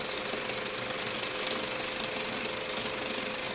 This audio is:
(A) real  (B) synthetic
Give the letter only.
A